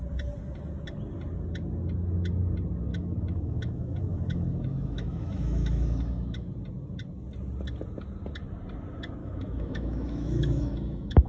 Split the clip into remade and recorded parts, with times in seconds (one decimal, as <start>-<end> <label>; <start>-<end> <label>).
0.0-2.9 recorded; 2.9-6.5 remade; 6.5-9.2 recorded; 9.2-11.3 remade